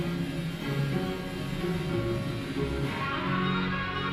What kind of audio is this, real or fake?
real